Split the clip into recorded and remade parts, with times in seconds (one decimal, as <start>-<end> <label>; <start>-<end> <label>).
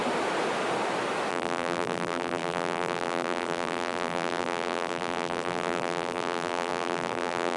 0.0-1.3 recorded; 1.3-7.6 remade